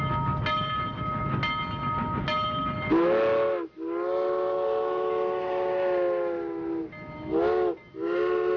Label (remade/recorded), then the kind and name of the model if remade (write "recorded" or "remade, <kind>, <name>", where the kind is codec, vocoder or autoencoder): recorded